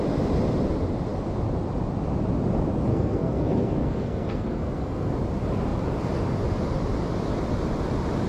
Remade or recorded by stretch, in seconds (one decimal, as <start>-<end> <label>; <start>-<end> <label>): 0.0-2.9 recorded; 2.9-5.1 remade; 5.1-8.3 recorded